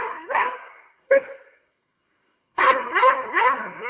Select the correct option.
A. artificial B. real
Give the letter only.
A